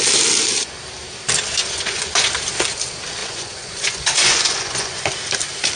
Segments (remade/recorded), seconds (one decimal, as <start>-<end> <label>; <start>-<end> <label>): 0.0-1.6 recorded; 1.6-2.3 remade; 2.3-3.2 recorded; 3.2-5.0 remade; 5.0-5.8 recorded